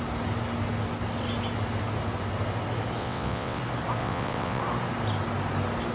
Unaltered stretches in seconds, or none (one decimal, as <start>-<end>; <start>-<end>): 0.0-3.0; 3.6-4.0; 4.6-5.9